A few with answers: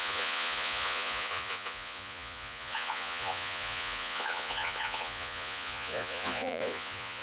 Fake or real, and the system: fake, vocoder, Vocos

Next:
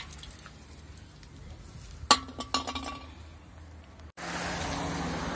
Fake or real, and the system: real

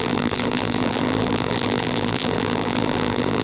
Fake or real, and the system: fake, vocoder, BigVGAN v2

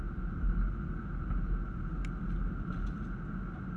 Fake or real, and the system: real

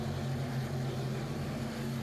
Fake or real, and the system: real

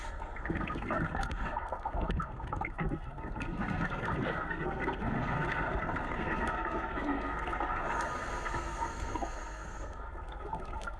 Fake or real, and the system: fake, codec, SNAC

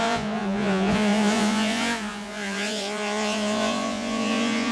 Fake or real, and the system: fake, vocoder, Vocos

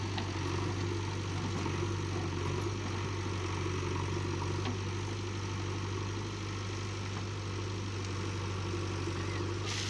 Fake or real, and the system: real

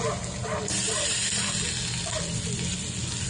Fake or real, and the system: real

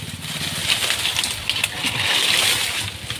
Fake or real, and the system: real